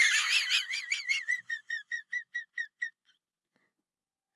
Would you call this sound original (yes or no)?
no